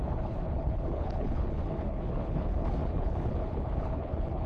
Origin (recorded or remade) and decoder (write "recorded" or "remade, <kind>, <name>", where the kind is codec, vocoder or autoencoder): remade, codec, HILCodec